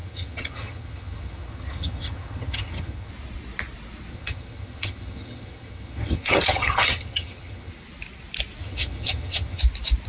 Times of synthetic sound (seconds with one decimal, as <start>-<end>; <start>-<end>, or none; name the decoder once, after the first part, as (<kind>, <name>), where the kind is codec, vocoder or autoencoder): 0.0-3.1 (vocoder, HiFi-GAN); 4.1-7.7; 8.6-9.6